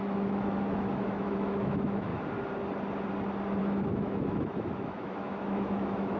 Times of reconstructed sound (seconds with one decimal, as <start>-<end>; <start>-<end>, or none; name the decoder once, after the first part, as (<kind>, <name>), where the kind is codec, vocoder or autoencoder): 0.0-2.1 (autoencoder, DAC-VAE); 3.6-6.2